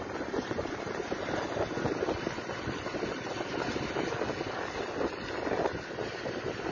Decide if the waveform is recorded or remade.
recorded